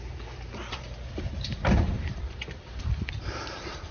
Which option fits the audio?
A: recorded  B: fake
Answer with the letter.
B